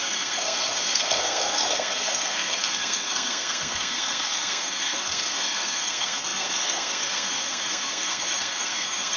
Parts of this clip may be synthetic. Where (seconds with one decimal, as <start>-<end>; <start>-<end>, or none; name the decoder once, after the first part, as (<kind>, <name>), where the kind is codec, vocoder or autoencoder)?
0.0-9.2 (codec, SNAC)